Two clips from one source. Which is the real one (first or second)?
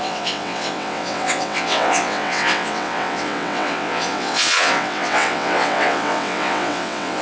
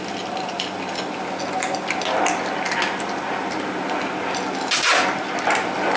second